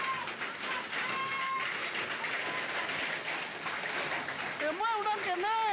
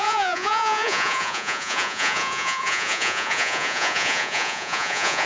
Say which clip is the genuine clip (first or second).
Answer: first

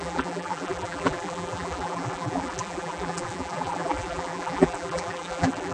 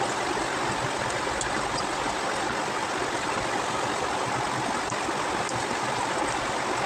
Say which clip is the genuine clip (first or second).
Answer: second